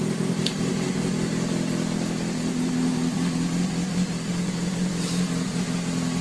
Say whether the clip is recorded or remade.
recorded